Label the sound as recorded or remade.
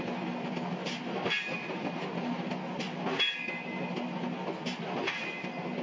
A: recorded